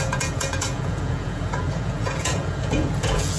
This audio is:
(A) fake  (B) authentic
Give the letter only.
A